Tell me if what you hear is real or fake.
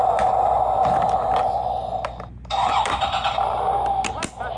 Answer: real